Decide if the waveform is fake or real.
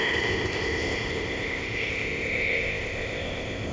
fake